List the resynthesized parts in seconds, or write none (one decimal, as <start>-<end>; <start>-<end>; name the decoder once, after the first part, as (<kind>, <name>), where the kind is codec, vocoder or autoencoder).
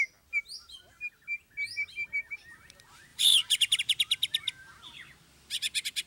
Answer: 3.1-3.8 (vocoder, BigVGAN v2)